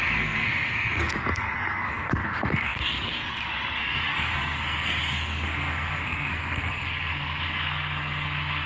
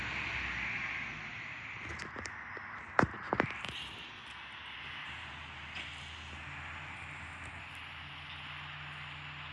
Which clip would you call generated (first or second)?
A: first